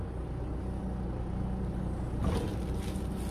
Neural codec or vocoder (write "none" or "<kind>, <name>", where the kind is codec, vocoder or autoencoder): none